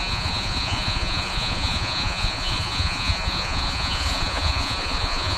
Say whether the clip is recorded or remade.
remade